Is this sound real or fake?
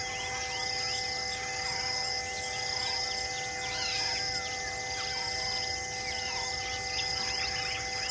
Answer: real